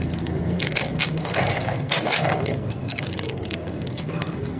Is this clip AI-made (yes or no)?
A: yes